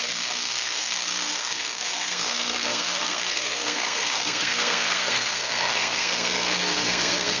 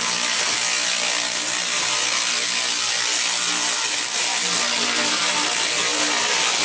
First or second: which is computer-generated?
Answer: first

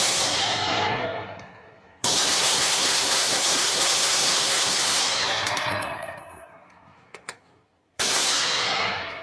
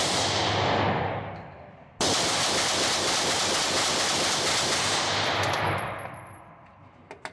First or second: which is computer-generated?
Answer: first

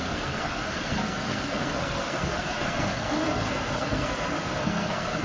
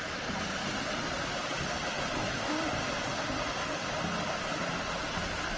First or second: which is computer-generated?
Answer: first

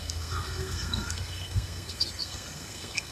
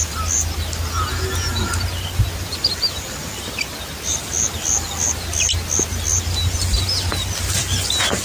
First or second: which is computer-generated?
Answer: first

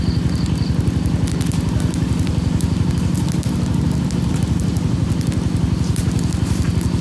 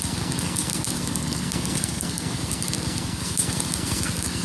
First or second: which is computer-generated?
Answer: second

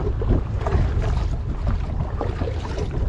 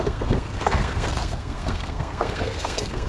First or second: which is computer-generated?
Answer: second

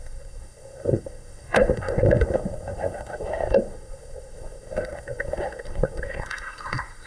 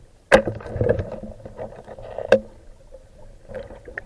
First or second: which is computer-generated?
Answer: first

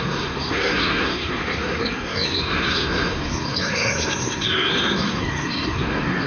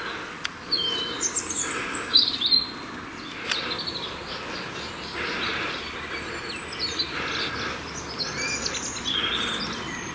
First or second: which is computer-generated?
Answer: first